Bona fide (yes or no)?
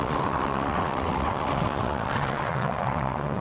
no